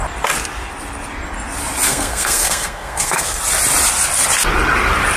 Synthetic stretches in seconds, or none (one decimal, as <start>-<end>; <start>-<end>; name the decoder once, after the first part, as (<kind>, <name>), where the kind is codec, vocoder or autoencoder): 1.9-3.4 (codec, SNAC)

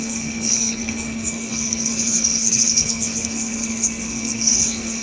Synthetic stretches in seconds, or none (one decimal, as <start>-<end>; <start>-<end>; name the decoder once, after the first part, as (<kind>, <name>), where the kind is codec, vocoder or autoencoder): 0.0-5.0 (codec, SNAC)

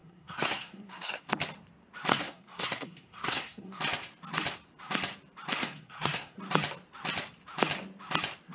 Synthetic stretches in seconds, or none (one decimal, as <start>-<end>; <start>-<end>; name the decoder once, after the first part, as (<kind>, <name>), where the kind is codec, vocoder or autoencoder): 0.0-1.3 (codec, SNAC); 2.1-3.8; 5.6-6.4

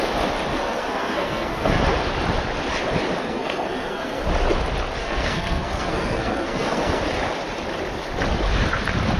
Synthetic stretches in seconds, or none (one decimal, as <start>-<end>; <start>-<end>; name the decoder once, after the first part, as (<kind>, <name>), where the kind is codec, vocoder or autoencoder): 0.5-1.8 (codec, SNAC); 3.2-4.2; 5.0-7.0

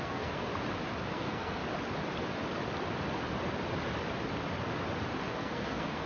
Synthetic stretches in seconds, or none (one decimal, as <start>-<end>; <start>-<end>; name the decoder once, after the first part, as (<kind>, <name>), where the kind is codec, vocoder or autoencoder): 0.0-0.5 (codec, SNAC); 1.1-1.6; 5.3-6.1

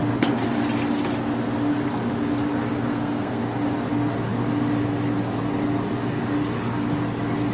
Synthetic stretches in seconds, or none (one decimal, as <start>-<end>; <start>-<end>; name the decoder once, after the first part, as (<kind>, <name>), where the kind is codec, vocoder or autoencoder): 2.9-3.4 (codec, SNAC)